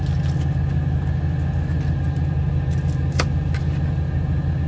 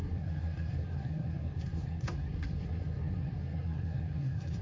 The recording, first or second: first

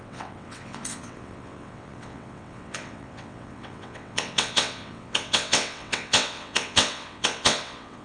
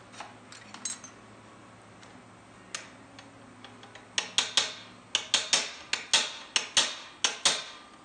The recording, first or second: second